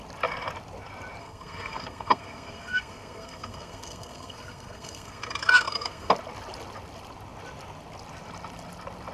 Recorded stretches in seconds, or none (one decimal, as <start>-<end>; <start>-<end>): 0.0-1.2; 6.1-9.1

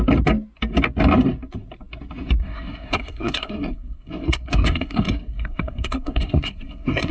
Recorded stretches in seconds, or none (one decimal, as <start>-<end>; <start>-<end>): 0.0-2.4

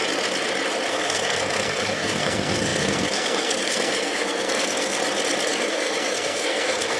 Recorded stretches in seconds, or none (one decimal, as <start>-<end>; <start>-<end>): 0.0-0.9; 5.0-5.6

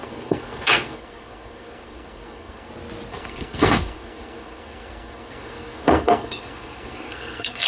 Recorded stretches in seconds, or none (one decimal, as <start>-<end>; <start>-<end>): 2.7-3.1

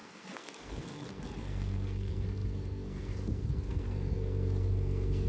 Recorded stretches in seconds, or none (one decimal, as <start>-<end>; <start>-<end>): none

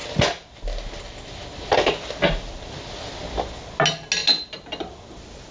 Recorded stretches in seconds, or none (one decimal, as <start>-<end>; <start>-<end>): 0.0-5.5

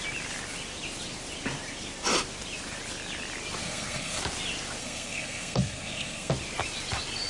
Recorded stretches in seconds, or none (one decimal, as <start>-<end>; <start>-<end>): 0.0-3.6; 4.2-4.8; 6.3-7.3